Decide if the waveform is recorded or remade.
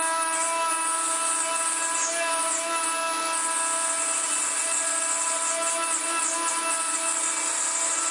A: recorded